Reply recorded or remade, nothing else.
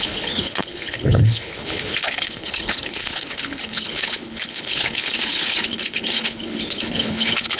remade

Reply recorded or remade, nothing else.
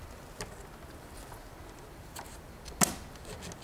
recorded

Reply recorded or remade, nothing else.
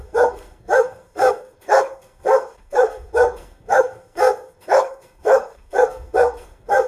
remade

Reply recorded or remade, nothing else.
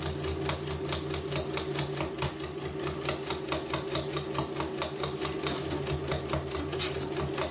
recorded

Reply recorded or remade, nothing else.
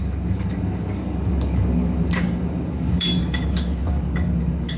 remade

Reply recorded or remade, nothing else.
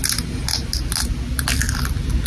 recorded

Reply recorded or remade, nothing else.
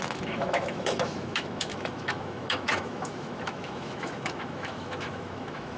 remade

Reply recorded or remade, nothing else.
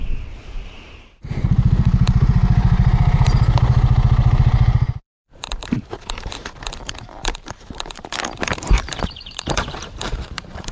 remade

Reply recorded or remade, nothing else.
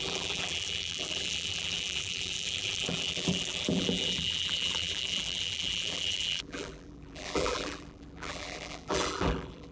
remade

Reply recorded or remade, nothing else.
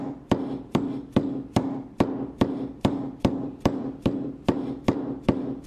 remade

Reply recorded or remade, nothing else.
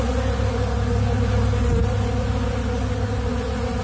recorded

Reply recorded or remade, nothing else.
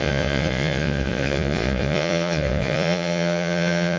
remade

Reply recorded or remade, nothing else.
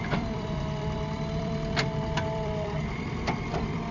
remade